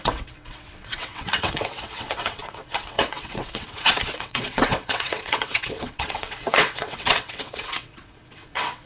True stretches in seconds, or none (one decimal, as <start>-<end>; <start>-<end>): none